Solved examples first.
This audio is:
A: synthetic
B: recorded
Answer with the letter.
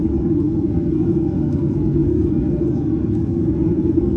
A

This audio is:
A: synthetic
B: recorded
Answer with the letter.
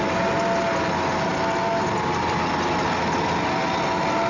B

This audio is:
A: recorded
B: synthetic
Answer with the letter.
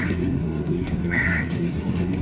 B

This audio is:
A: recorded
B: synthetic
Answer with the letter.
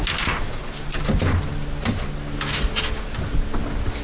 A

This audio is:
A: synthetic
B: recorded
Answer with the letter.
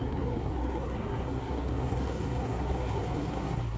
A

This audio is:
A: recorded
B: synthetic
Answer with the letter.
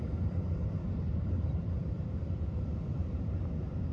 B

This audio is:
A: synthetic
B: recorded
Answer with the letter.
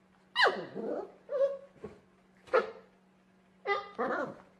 B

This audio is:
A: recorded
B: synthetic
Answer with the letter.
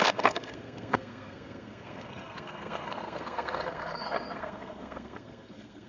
B